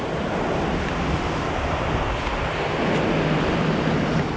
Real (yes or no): yes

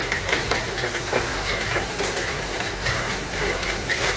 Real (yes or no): no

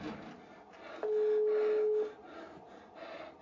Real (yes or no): yes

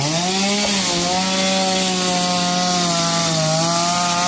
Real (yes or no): yes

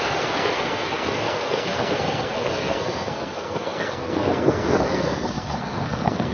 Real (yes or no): no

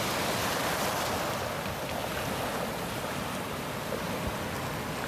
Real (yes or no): yes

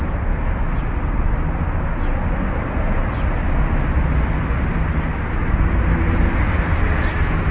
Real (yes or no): yes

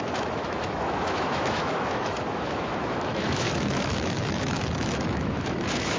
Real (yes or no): no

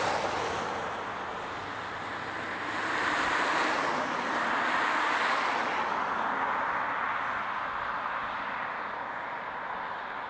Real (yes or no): yes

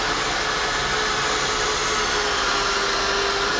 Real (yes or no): yes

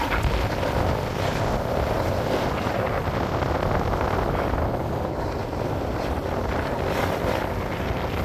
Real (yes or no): yes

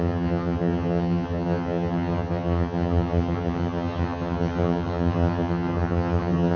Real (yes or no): no